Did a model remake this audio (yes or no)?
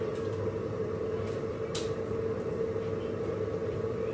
no